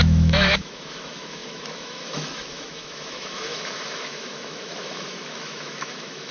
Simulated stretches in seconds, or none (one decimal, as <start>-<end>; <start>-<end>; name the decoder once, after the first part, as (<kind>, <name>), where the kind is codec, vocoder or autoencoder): 0.0-6.3 (autoencoder, DAC-VAE)